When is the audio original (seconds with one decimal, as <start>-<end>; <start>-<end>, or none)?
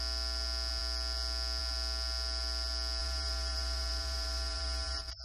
0.0-3.0